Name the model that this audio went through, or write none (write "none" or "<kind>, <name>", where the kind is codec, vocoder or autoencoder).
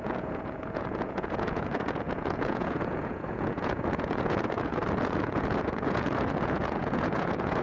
vocoder, Vocos